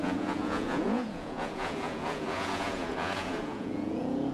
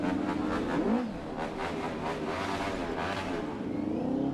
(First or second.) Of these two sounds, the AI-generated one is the first